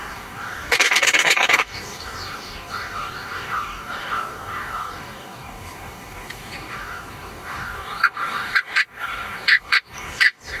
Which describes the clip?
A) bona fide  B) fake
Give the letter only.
B